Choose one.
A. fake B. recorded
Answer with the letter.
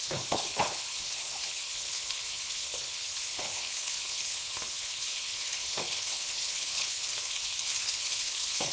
A